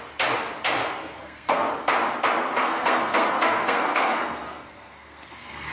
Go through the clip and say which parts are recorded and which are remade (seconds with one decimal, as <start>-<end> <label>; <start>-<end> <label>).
0.0-0.8 recorded; 0.8-1.7 remade; 1.7-2.4 recorded; 2.4-5.7 remade